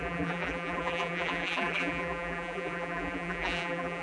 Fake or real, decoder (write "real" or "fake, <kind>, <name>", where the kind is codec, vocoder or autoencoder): fake, vocoder, BigVGAN v2